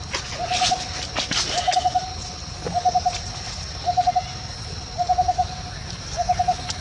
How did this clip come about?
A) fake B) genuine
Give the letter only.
B